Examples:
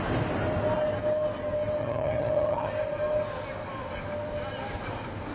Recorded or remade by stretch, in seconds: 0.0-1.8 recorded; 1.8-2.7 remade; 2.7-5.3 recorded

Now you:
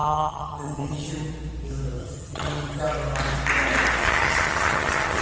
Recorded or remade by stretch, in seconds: 0.0-1.1 remade; 1.1-2.0 recorded; 2.0-2.8 remade; 2.8-4.0 recorded; 4.0-5.2 remade

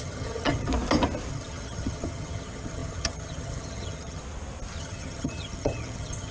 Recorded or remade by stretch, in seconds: 0.0-0.7 remade; 0.7-1.3 recorded; 1.3-4.2 remade; 4.2-4.8 recorded; 4.8-6.3 remade

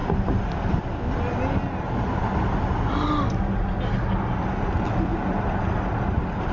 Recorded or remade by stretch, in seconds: 0.0-6.5 recorded

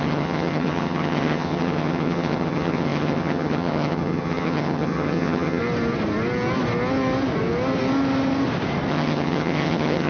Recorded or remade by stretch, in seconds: 0.0-5.6 remade; 5.6-8.9 recorded; 8.9-10.1 remade

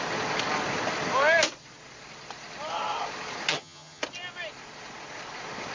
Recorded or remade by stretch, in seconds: 0.0-3.5 recorded; 3.5-4.0 remade; 4.0-5.7 recorded